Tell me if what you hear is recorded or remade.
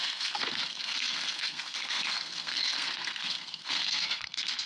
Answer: remade